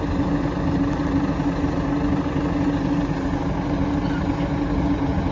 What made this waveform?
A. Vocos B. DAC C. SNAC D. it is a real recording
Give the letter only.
D